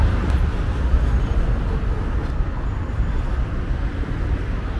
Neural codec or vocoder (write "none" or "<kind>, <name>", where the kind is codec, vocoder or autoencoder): none